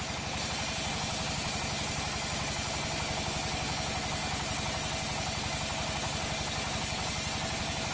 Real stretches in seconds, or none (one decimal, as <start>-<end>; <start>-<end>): 0.0-7.9